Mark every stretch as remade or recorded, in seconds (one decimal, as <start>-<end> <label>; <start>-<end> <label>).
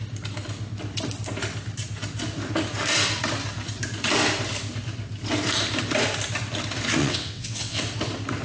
0.0-7.0 recorded; 7.0-7.8 remade; 7.8-8.4 recorded